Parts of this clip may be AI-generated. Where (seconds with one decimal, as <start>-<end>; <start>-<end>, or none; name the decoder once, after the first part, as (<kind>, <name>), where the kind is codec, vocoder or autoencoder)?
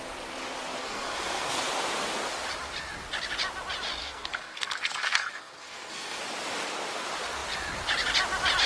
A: 0.8-1.6 (codec, SNAC); 4.0-6.2